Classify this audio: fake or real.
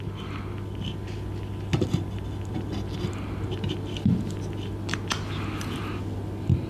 real